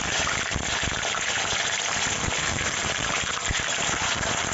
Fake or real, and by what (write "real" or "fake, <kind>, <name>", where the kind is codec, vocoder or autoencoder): fake, vocoder, BigVGAN v2